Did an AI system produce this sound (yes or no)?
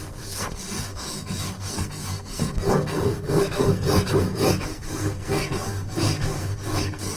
yes